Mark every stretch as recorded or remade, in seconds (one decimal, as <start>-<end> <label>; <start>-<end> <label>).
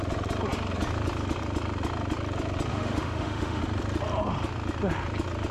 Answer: 0.0-2.7 recorded; 2.7-3.6 remade; 3.6-5.5 recorded